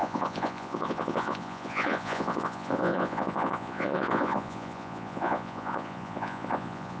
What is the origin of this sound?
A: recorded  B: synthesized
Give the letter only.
B